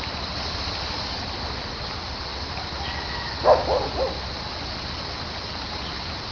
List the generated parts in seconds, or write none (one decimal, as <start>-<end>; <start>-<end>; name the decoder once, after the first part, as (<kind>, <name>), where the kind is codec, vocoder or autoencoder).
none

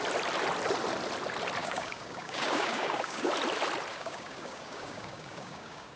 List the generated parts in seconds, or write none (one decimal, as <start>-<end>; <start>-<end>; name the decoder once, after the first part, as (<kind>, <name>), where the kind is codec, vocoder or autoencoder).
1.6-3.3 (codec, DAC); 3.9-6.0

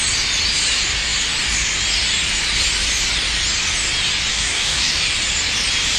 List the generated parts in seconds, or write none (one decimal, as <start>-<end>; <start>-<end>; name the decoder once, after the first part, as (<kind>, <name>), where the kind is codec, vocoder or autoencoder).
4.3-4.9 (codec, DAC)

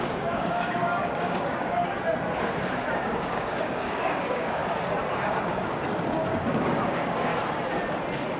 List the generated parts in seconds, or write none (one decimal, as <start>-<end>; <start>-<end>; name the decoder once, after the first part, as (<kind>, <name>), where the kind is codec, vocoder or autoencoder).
0.0-1.8 (codec, DAC); 2.9-4.6; 5.4-7.3

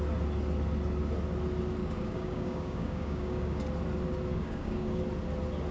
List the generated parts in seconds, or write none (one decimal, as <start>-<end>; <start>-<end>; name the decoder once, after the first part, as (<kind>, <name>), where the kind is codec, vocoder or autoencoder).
1.8-3.6 (codec, DAC); 4.3-5.0